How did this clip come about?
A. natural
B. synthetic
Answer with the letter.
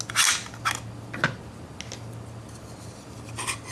A